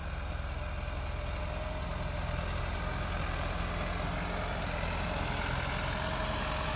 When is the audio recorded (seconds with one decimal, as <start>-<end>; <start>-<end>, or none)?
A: 0.0-6.8